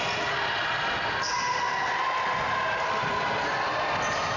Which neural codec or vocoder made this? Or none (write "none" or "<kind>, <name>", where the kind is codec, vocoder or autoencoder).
none